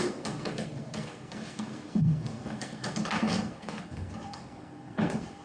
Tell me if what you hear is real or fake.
fake